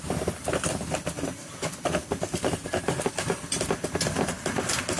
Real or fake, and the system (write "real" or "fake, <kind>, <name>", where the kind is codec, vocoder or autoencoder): real